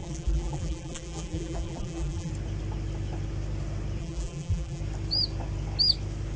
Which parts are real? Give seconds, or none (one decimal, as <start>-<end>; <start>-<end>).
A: 2.3-4.0; 4.8-6.4